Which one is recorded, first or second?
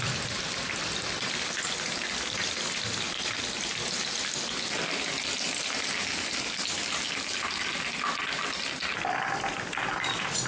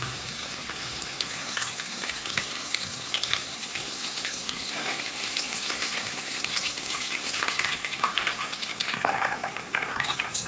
first